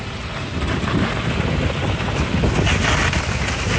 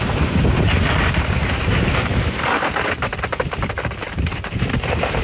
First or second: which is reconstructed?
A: second